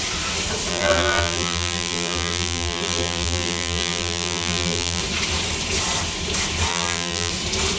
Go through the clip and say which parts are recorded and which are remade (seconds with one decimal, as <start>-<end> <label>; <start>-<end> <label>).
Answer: 0.0-0.7 recorded; 0.7-5.0 remade; 5.0-6.7 recorded; 6.7-7.3 remade; 7.3-7.8 recorded